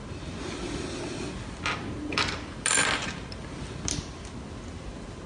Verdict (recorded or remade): recorded